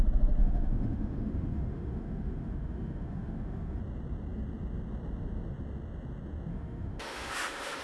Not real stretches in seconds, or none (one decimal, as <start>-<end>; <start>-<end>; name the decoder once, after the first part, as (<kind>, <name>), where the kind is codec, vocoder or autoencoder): 0.4-3.8 (autoencoder, DAC-VAE); 6.5-7.8